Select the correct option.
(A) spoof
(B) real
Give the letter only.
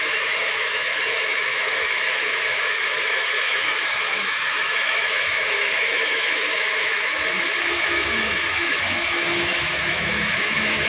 A